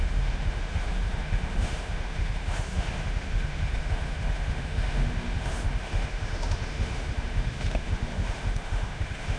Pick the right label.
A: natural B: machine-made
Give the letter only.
B